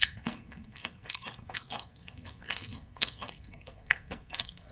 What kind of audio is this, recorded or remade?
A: remade